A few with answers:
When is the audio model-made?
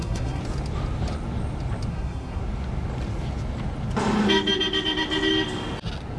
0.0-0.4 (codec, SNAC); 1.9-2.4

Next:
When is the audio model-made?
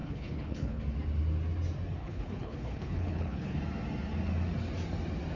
0.0-0.8 (codec, HILCodec); 2.0-3.6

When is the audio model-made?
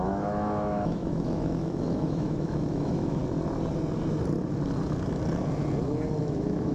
0.0-3.2 (autoencoder, DAC-VAE); 6.2-6.7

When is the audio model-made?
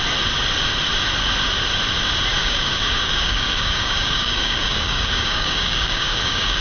2.4-6.6 (codec, DAC)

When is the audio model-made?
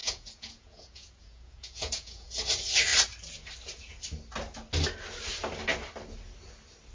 0.0-2.3 (vocoder, Vocos)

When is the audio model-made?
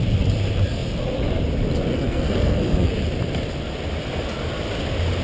1.9-2.9 (codec, SNAC)